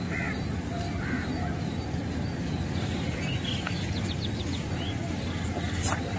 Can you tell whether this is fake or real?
real